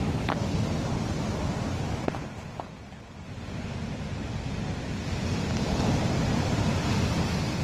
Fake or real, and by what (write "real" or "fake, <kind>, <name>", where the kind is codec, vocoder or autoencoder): real